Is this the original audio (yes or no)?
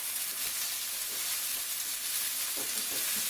yes